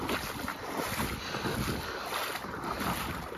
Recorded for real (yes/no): yes